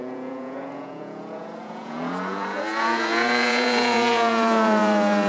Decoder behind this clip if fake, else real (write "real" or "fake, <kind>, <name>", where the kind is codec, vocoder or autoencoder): fake, vocoder, Vocos